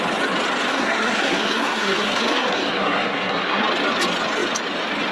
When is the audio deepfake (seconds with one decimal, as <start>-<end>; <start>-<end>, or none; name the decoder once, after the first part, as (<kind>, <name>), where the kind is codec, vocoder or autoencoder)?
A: 0.7-3.6 (codec, SNAC)